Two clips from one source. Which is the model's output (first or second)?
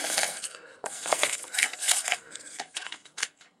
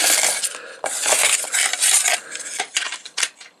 first